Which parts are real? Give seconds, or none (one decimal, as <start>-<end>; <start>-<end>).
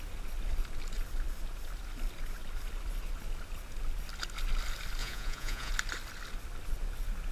0.0-5.0; 5.7-7.3